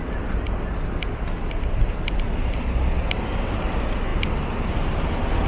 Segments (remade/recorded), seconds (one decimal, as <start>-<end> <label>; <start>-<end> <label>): 0.0-5.5 recorded